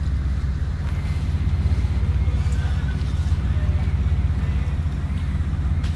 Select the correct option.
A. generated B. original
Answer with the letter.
B